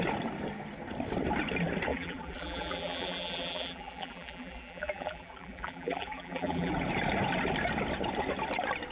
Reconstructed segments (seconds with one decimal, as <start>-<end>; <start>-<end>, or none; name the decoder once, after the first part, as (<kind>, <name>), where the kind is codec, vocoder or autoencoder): 1.9-6.7 (vocoder, BigVGAN v2)